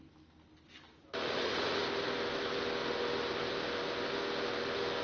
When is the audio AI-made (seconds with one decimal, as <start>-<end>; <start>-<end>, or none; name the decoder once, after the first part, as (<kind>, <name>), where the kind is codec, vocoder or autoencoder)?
1.2-1.8 (vocoder, Vocos)